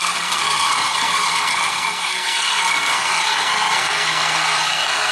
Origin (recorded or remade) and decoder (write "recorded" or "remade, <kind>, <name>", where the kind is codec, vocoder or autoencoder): remade, codec, SNAC